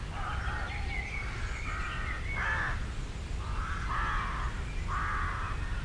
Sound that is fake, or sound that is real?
real